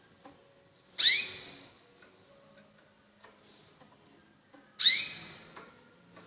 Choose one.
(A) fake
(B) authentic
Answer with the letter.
B